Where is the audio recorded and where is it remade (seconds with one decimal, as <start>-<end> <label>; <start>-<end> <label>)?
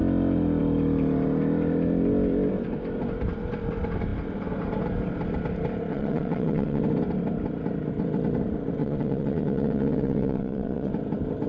0.0-5.9 recorded; 5.9-6.8 remade; 6.8-8.8 recorded; 8.8-10.9 remade; 10.9-11.5 recorded